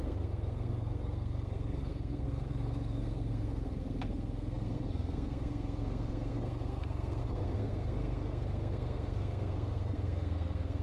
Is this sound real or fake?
fake